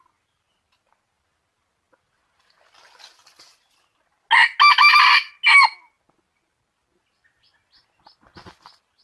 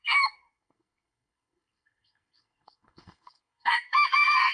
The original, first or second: first